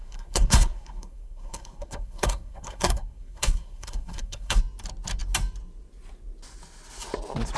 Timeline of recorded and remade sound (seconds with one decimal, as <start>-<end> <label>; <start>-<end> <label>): 0.0-4.6 remade; 4.6-7.6 recorded